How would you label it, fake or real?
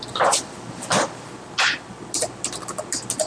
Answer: real